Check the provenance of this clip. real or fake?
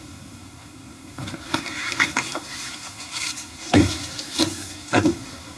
fake